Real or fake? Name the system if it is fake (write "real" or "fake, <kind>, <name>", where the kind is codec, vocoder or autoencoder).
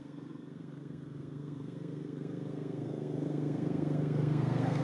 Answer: fake, codec, SNAC